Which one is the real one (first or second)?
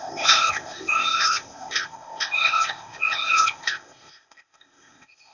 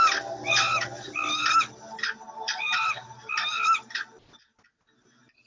second